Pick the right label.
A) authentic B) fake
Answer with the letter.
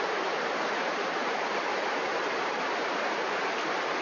B